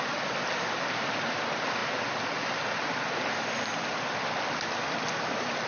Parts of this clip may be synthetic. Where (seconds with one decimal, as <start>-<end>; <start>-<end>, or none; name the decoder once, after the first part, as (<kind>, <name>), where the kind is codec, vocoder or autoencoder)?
none